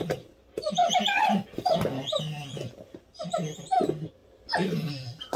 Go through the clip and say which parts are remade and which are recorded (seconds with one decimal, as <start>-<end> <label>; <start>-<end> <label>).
0.0-5.4 recorded